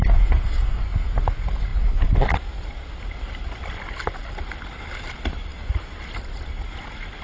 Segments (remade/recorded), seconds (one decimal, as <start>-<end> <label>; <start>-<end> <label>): 0.0-7.2 recorded